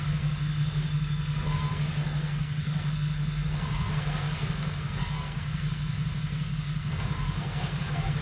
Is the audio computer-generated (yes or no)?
yes